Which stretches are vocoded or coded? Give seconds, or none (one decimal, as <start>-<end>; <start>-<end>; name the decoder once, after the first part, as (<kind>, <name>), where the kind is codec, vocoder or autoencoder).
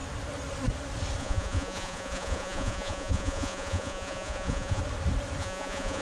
1.2-4.8 (vocoder, Vocos); 5.4-6.0